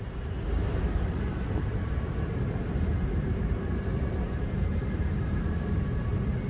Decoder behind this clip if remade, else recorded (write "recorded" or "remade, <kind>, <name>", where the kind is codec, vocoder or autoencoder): remade, vocoder, BigVGAN v2